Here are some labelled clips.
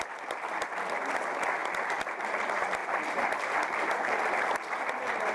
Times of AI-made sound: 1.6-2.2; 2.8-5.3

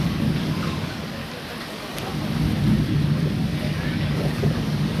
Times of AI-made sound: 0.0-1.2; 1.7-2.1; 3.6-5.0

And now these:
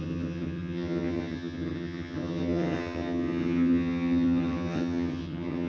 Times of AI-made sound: 0.0-5.7